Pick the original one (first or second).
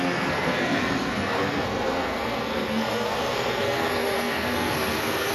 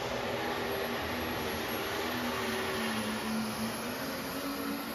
second